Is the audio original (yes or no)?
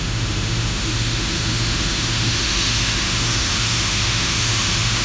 no